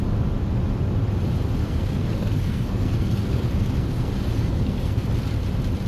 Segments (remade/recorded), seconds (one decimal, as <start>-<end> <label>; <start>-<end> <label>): 0.0-1.6 recorded; 1.6-5.1 remade; 5.1-5.9 recorded

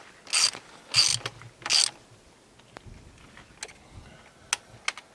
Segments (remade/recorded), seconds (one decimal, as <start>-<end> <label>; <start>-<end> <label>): 0.0-5.1 recorded

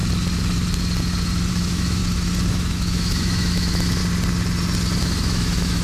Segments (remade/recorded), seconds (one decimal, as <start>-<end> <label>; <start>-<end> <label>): 0.0-1.5 recorded; 1.5-2.0 remade; 2.0-2.5 recorded; 2.5-4.0 remade; 4.0-5.0 recorded; 5.0-5.8 remade

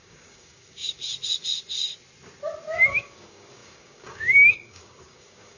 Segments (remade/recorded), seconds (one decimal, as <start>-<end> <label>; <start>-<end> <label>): 0.0-1.0 remade; 1.0-2.9 recorded; 2.9-5.6 remade

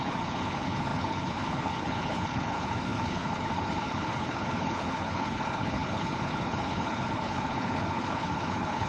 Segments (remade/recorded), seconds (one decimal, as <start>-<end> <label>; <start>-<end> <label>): 0.0-8.9 remade

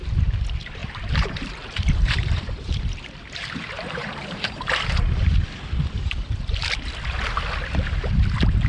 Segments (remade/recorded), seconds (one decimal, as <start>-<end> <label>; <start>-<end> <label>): 0.0-0.8 recorded; 0.8-5.5 remade; 5.5-8.7 recorded

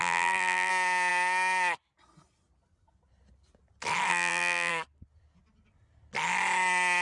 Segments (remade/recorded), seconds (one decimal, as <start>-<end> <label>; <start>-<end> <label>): 0.0-0.7 remade; 0.7-4.1 recorded; 4.1-4.7 remade; 4.7-7.0 recorded